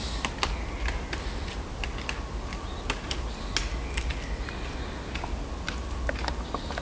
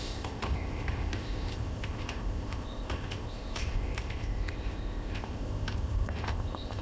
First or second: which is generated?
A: second